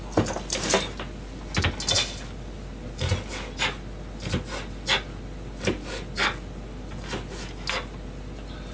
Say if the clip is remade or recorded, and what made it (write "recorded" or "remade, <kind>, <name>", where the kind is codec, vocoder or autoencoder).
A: recorded